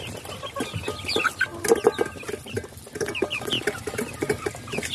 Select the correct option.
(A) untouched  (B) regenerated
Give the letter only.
A